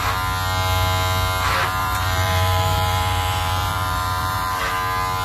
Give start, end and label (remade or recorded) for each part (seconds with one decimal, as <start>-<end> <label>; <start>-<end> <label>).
0.0-1.8 recorded; 1.8-4.6 remade; 4.6-5.2 recorded

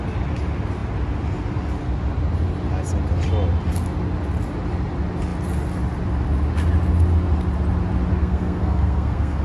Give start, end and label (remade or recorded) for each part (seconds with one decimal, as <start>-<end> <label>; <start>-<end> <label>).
0.0-8.2 recorded; 8.2-9.4 remade

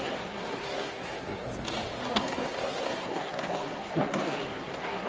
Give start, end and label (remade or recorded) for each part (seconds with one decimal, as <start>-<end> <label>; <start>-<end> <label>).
0.0-1.5 remade; 1.5-2.1 recorded; 2.1-5.1 remade

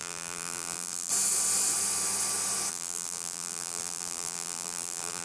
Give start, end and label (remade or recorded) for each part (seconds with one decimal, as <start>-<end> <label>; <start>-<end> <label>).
0.0-1.1 remade; 1.1-2.7 recorded; 2.7-5.2 remade

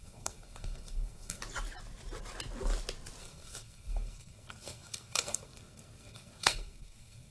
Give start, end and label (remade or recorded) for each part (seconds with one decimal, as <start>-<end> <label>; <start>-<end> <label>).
0.0-1.4 remade; 1.4-3.2 recorded; 3.2-7.3 remade

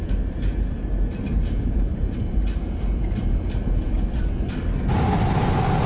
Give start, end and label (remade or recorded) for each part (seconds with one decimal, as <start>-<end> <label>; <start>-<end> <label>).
0.0-1.9 recorded; 1.9-3.6 remade; 3.6-5.9 recorded

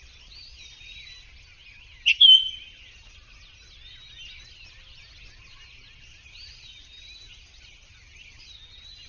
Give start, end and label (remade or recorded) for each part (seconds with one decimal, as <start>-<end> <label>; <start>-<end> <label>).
0.0-9.1 recorded

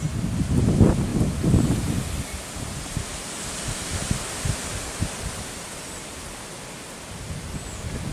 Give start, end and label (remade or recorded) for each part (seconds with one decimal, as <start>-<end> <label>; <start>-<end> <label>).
0.0-8.1 recorded